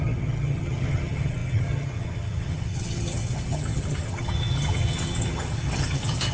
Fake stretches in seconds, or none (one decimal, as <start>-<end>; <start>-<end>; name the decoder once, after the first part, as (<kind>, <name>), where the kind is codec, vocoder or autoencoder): 0.0-6.3 (vocoder, HiFi-GAN)